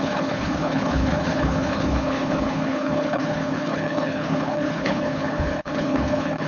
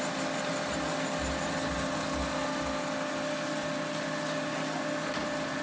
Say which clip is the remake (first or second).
first